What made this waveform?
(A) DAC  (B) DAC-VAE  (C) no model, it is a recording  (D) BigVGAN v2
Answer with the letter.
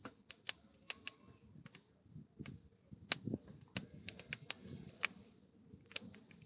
C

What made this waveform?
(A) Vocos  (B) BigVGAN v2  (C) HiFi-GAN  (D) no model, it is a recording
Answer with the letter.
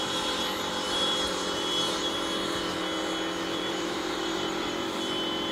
B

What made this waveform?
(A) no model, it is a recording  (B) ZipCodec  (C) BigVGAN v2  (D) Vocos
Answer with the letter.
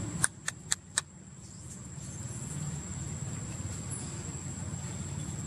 A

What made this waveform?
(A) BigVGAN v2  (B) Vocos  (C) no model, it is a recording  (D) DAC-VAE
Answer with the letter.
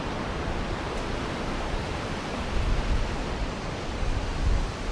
A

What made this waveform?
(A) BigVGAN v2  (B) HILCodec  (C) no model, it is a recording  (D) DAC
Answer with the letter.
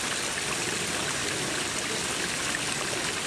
C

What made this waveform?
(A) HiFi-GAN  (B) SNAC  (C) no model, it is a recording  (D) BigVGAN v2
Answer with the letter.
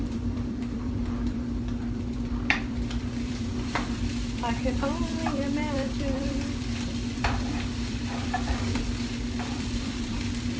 D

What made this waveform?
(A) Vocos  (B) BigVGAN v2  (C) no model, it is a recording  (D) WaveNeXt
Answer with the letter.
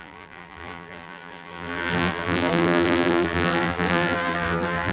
B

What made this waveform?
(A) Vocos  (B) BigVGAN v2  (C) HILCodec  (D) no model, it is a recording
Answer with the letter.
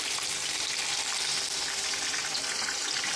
B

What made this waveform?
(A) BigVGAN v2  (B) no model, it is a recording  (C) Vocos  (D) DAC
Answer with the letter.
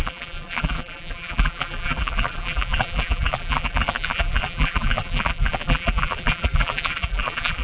A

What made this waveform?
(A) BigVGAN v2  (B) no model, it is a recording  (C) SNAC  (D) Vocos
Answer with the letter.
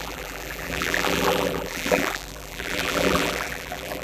A